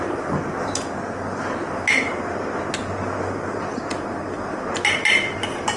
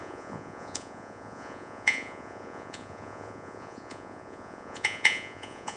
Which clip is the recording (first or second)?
first